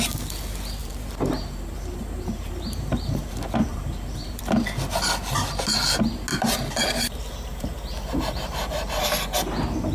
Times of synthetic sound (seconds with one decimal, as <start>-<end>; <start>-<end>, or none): 0.8-3.3; 3.7-4.4; 6.3-9.0